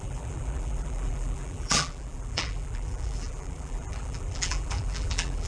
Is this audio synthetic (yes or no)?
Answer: yes